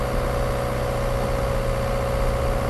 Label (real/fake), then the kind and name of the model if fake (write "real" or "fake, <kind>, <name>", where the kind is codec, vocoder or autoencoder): real